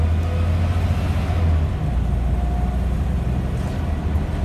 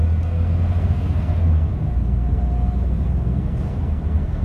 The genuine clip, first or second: first